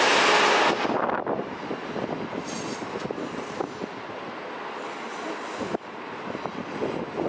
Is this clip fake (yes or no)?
no